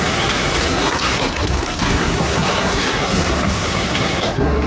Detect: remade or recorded remade